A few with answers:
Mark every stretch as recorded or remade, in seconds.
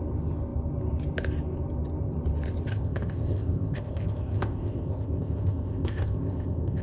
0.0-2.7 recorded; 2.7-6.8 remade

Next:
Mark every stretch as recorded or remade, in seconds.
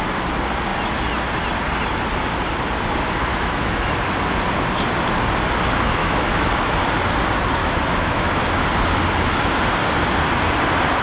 0.0-3.3 recorded; 3.3-3.9 remade; 3.9-6.0 recorded; 6.0-6.8 remade; 6.8-7.6 recorded; 7.6-8.4 remade; 8.4-11.0 recorded